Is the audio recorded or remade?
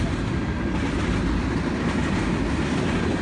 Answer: recorded